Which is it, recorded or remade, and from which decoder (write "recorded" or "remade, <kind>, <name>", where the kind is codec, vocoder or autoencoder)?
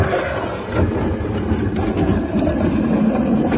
recorded